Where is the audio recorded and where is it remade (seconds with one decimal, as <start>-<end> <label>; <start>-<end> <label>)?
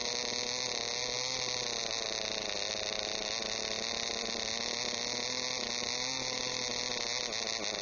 0.0-7.8 recorded